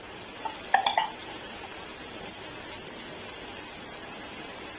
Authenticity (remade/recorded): recorded